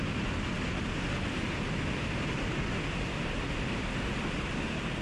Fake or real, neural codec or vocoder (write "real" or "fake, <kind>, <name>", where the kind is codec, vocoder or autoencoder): real